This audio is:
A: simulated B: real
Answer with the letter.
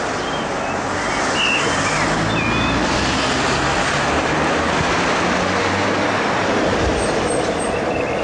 B